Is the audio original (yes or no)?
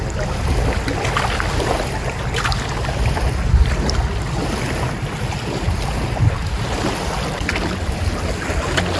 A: yes